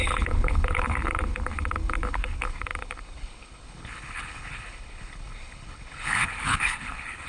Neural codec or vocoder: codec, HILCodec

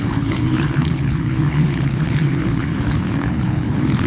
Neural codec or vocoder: codec, HILCodec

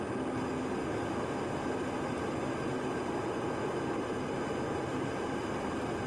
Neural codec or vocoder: none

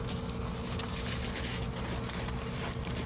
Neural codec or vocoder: none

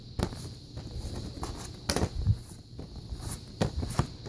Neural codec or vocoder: none